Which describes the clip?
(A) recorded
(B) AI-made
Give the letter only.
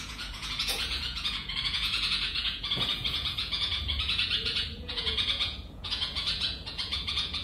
B